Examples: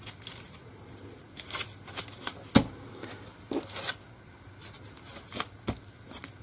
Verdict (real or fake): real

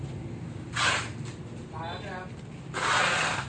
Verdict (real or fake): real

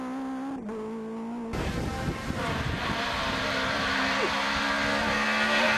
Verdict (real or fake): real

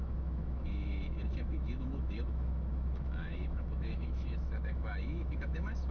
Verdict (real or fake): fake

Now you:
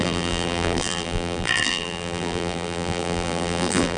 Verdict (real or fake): fake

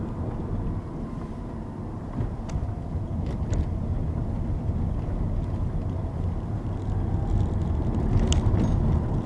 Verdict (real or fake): real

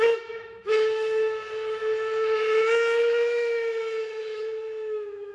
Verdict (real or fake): fake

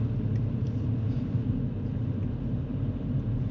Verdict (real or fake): real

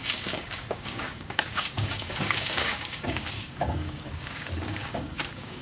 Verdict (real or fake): fake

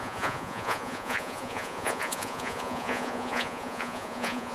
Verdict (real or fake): fake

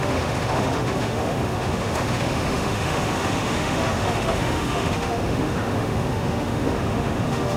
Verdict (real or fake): fake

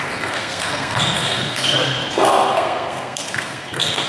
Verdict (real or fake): fake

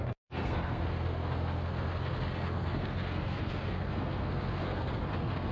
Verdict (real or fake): fake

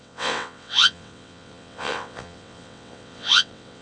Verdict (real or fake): fake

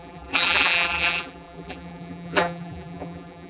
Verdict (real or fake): fake